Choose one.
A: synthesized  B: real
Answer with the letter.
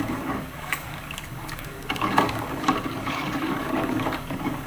A